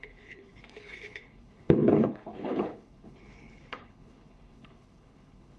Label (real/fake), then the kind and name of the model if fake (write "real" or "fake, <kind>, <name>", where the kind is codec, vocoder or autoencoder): fake, codec, HILCodec